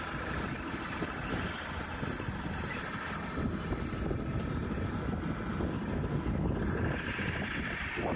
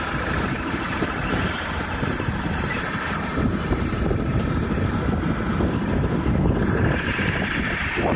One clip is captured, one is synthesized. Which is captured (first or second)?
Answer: first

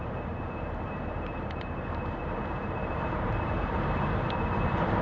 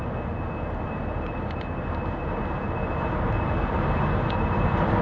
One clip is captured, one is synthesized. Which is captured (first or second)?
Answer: second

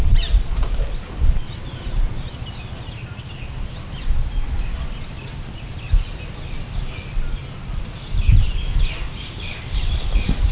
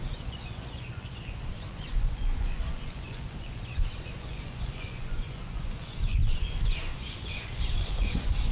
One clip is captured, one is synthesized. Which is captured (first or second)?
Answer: first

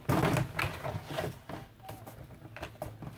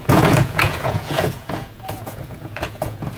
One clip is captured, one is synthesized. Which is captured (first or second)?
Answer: first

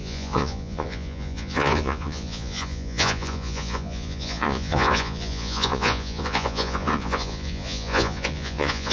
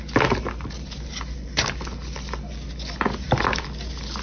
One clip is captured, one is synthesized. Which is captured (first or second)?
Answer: second